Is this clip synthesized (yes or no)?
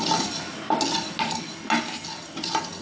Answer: no